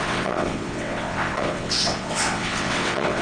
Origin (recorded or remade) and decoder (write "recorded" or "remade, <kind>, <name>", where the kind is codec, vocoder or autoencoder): remade, vocoder, WaveNeXt